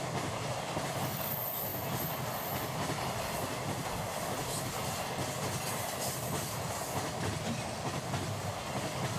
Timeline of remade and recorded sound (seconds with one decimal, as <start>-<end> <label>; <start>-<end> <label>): 0.0-9.2 recorded